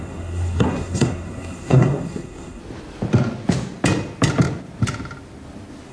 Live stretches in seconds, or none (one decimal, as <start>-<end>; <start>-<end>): 2.6-5.9